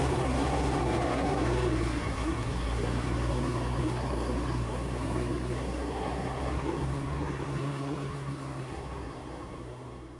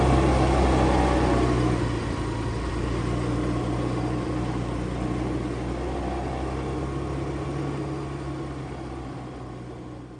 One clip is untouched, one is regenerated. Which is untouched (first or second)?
second